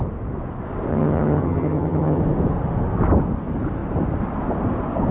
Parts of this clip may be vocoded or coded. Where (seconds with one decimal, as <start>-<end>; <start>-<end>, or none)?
0.9-2.2